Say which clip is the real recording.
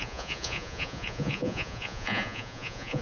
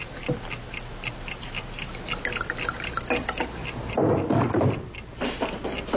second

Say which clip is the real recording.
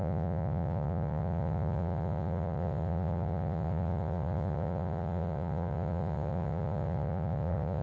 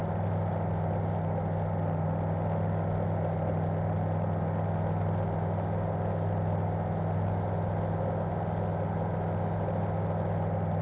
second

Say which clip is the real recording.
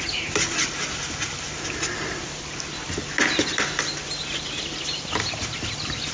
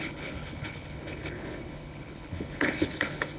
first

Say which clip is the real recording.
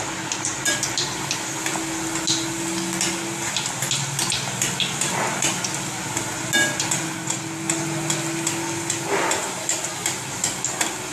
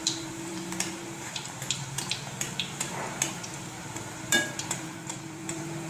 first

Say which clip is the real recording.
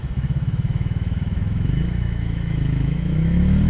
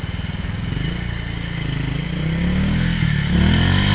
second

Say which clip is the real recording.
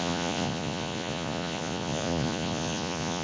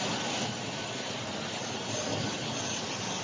second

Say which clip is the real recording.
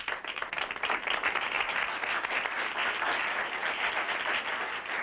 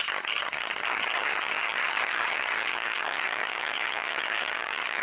first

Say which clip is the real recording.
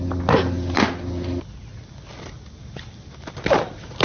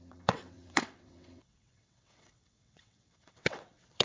first